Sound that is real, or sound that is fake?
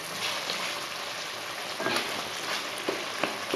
real